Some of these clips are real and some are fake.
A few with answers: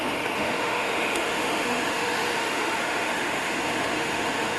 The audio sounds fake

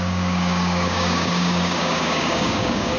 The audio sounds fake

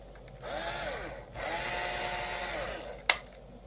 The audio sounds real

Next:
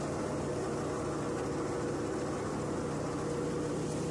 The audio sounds real